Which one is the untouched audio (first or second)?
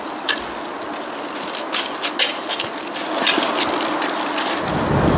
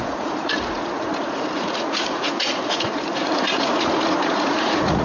first